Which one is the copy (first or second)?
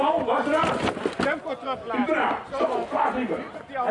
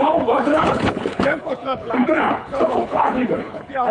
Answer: second